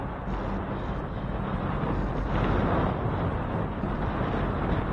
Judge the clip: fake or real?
real